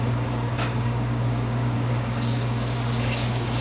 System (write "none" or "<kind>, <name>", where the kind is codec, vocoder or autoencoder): codec, DAC